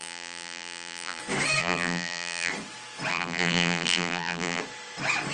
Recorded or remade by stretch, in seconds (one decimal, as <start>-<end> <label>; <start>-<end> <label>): 0.0-1.2 remade; 1.2-1.6 recorded; 1.6-2.5 remade; 2.5-3.1 recorded; 3.1-4.6 remade; 4.6-5.3 recorded